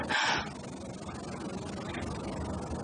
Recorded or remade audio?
recorded